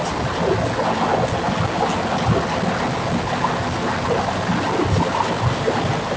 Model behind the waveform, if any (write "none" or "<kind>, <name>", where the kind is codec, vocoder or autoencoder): none